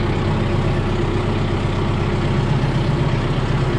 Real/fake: real